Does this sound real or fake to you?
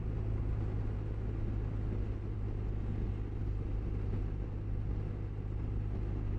real